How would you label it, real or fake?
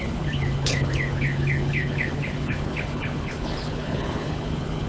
fake